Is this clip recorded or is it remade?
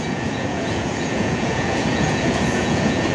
remade